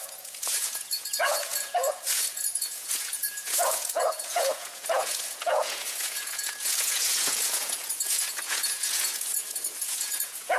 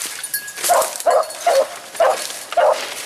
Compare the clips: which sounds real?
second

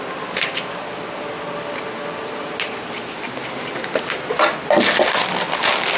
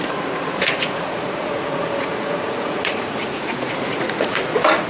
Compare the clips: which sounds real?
first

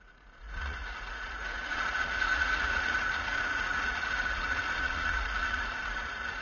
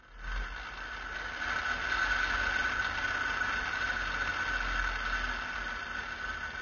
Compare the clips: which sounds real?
second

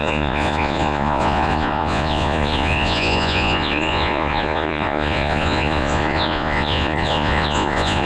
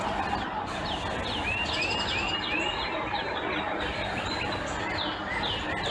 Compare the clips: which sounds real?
second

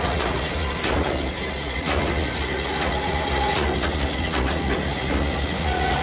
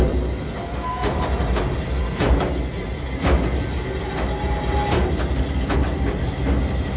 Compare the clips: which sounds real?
second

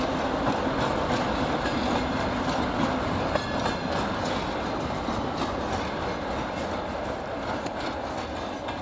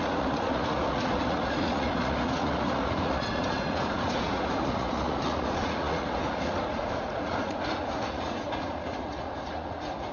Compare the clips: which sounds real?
first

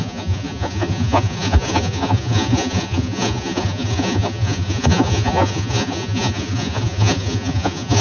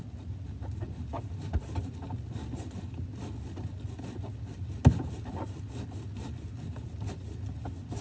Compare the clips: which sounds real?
second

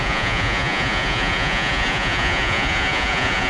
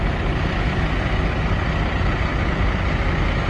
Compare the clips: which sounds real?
second